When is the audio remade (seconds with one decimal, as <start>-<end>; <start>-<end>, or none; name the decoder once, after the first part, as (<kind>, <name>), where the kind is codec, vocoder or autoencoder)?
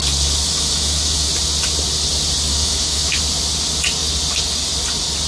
0.5-1.3 (autoencoder, DAC-VAE); 2.5-3.2